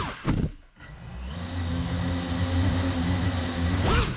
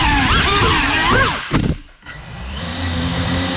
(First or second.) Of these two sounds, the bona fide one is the first